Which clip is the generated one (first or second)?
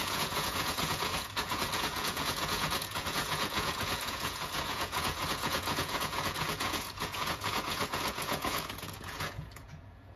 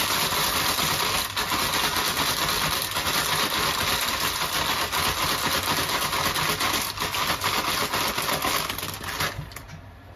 first